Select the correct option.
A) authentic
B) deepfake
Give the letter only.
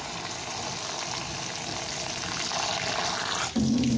A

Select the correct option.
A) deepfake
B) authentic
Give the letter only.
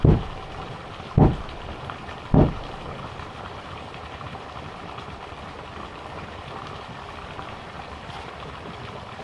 B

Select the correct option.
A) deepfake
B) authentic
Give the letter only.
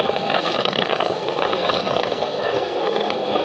A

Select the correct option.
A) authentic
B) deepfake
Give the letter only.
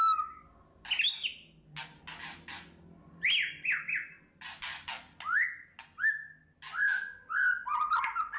A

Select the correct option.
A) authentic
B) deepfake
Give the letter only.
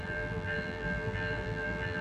B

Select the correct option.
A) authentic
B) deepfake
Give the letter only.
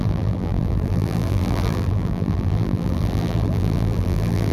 B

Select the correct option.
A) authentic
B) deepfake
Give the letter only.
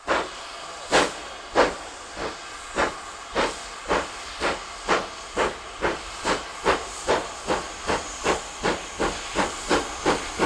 A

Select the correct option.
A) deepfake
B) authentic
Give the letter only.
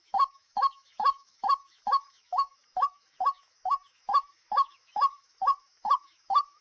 A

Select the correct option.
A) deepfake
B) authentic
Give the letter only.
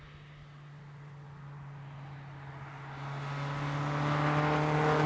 B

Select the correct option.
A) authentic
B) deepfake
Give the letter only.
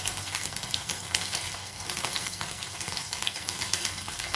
B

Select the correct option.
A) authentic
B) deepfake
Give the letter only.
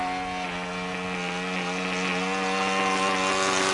A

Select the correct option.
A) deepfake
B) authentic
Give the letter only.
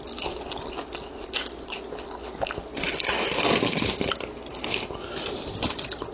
B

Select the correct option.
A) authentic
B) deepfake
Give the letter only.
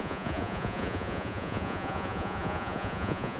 B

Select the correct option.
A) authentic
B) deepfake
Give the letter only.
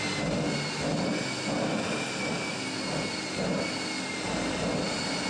A